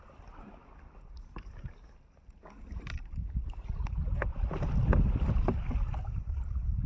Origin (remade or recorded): recorded